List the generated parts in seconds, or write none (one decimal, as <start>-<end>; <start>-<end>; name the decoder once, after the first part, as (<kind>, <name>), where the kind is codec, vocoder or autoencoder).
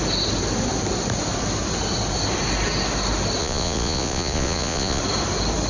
3.4-5.0 (vocoder, Vocos)